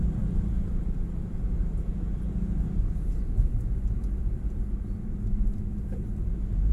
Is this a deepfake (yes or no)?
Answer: yes